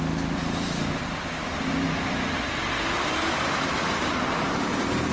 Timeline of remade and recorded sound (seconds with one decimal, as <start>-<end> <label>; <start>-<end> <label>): 0.0-5.1 recorded